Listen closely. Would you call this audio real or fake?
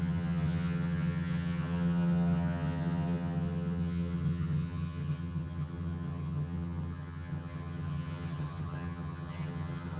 fake